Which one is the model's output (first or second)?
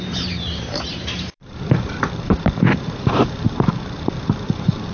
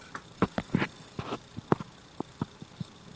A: first